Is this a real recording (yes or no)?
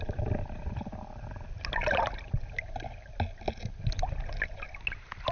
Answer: yes